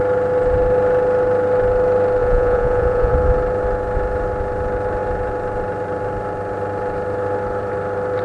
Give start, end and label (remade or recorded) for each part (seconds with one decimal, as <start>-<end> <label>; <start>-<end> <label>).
0.0-2.2 recorded; 2.2-3.1 remade; 3.1-8.2 recorded